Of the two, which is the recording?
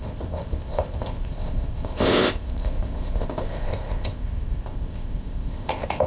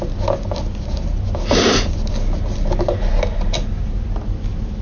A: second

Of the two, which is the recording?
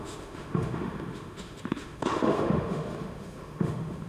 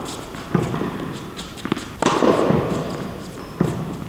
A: second